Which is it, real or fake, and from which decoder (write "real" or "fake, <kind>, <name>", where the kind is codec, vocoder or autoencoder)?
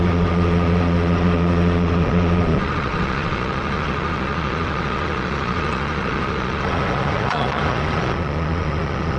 fake, vocoder, Vocos